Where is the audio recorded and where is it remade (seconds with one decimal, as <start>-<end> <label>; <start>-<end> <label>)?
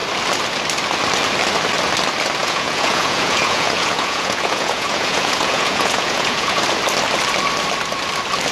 0.0-2.4 recorded; 2.4-6.6 remade; 6.6-8.5 recorded